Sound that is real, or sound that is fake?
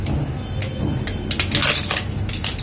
real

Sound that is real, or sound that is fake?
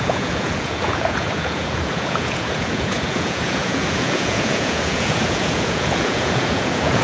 fake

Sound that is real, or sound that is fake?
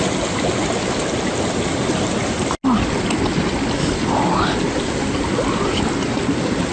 real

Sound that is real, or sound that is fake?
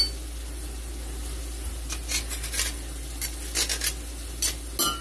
real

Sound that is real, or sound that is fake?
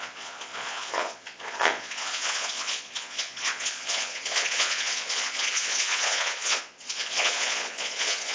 fake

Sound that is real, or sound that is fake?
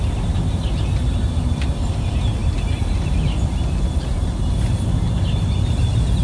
real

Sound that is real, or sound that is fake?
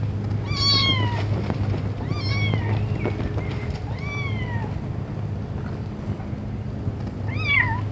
real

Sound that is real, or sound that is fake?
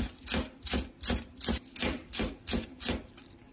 real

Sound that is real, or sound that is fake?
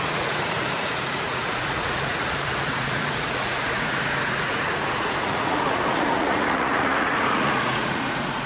fake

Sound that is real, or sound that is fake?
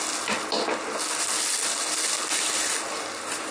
real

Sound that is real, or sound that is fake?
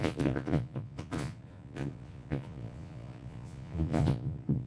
fake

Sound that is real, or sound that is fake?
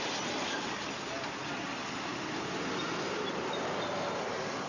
real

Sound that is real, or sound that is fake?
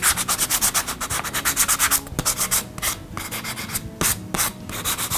real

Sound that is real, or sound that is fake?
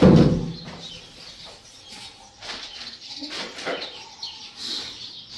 real